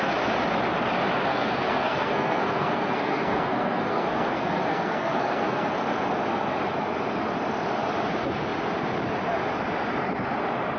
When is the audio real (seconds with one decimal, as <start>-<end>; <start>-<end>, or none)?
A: 0.0-1.3; 5.7-10.8